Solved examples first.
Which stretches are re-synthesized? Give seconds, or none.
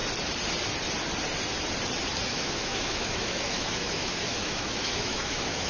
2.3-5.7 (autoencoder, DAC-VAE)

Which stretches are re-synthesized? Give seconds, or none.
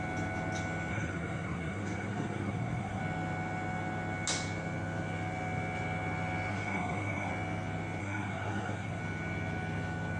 0.9-3.0 (codec, SNAC); 6.5-7.3; 8.0-9.0